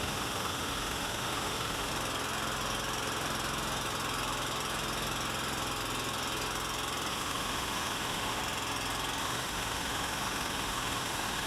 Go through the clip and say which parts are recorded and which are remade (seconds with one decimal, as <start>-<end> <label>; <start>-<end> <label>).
0.0-1.9 remade; 1.9-7.1 recorded; 7.1-8.4 remade; 8.4-9.2 recorded; 9.2-11.5 remade